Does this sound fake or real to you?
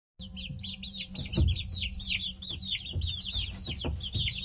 real